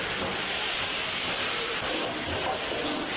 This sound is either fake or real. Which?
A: real